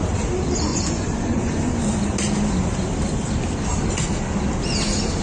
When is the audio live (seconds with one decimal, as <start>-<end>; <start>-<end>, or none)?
0.0-0.7; 1.8-5.2